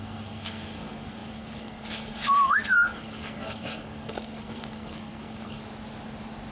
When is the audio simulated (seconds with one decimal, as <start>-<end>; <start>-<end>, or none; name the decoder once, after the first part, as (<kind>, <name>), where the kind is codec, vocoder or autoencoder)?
0.0-5.6 (codec, SNAC)